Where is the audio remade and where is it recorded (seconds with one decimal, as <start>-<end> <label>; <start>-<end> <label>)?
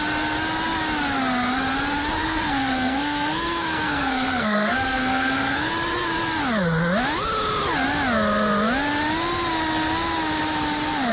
0.0-2.2 recorded; 2.2-5.7 remade; 5.7-11.1 recorded